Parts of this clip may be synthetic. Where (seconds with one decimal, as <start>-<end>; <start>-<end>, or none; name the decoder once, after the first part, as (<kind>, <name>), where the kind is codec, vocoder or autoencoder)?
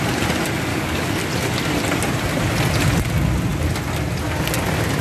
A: 0.7-1.2 (codec, DAC)